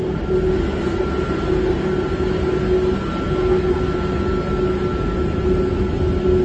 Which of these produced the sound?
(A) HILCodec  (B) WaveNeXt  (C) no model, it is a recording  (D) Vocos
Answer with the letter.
C